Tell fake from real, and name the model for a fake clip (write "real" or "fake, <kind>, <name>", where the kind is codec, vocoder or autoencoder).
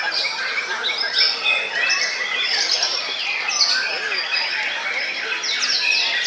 real